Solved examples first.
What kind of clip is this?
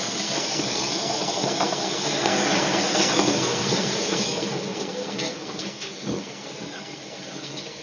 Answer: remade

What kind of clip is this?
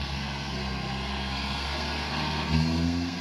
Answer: remade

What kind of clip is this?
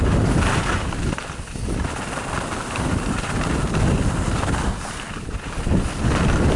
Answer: recorded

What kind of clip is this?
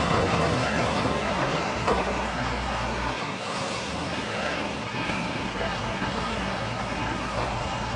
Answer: remade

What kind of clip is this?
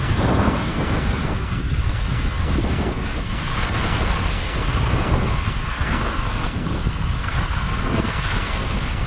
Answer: remade